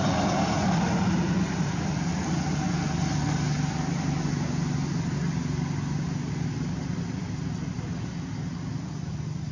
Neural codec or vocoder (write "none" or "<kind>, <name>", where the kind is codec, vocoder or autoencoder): none